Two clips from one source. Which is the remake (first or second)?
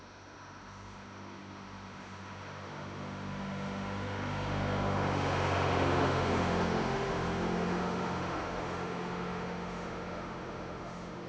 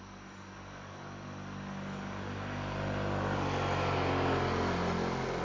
first